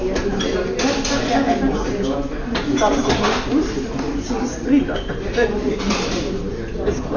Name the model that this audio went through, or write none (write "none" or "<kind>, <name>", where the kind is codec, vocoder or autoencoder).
none